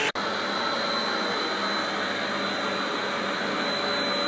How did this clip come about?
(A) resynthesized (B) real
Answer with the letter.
B